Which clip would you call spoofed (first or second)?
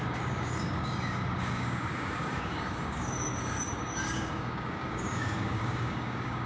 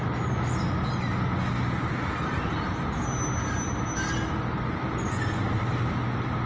first